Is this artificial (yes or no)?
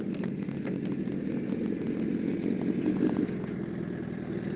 no